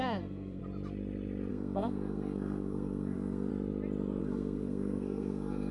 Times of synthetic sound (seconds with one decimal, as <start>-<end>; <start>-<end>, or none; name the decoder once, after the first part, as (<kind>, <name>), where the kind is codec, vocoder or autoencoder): 0.0-0.6 (codec, SNAC); 1.5-3.5; 4.2-5.7